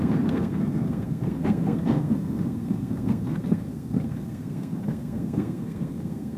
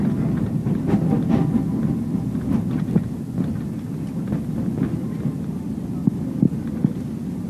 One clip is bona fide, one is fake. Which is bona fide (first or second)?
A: second